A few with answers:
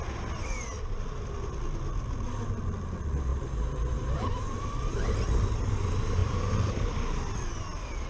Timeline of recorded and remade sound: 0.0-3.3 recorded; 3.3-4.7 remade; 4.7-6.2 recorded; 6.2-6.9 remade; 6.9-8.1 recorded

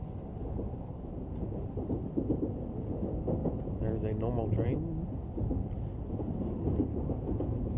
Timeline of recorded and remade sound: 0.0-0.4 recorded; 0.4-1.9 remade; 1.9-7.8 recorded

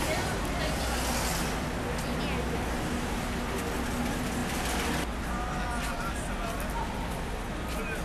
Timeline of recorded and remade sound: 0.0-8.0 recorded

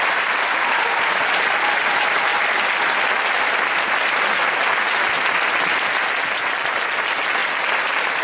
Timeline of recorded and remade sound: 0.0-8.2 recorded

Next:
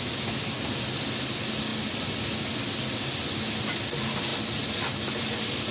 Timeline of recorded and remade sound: 0.0-5.7 recorded

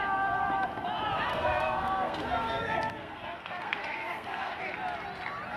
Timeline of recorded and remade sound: 0.0-1.3 recorded; 1.3-4.6 remade; 4.6-5.6 recorded